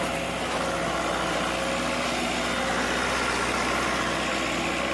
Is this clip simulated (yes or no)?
no